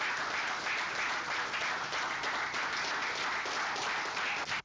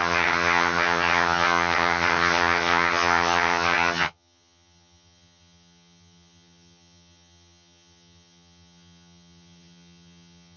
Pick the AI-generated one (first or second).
second